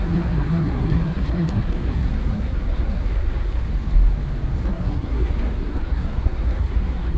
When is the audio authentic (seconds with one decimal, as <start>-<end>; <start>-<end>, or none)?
3.6-4.6